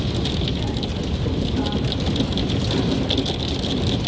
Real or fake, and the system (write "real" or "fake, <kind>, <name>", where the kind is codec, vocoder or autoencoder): real